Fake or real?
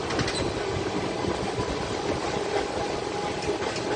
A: real